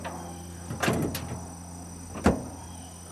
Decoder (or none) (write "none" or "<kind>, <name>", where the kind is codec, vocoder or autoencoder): none